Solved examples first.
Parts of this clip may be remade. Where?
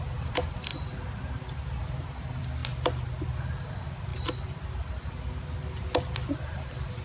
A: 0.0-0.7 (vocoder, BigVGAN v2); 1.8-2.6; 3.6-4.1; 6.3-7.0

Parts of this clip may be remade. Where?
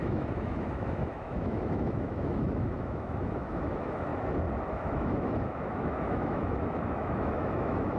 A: 0.0-4.1 (autoencoder, DAC-VAE); 4.7-8.0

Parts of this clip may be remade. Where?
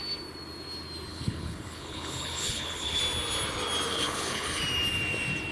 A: 1.1-3.0 (codec, HILCodec); 3.9-4.6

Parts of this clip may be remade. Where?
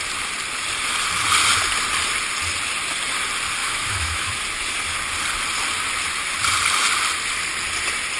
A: 3.6-4.3 (autoencoder, DAC-VAE)